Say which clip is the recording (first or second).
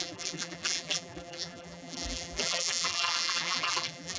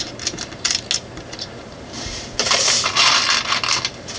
second